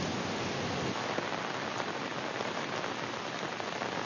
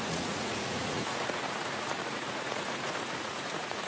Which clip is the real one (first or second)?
first